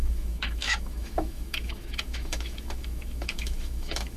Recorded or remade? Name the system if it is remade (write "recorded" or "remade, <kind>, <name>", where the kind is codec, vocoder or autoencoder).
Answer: remade, autoencoder, DAC-VAE